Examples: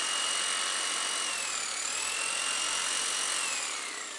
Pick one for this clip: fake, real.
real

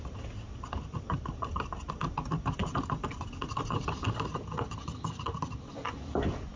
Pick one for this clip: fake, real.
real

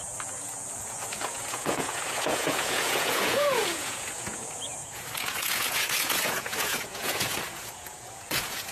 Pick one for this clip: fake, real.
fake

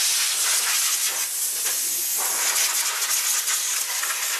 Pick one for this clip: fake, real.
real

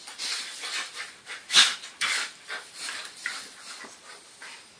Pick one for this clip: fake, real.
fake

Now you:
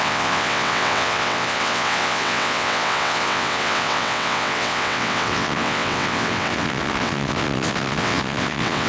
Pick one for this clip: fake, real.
fake